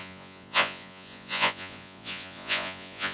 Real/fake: fake